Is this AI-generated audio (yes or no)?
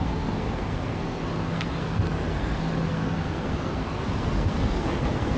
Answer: yes